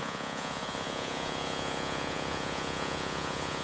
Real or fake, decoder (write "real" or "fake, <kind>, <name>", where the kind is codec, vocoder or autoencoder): fake, vocoder, Vocos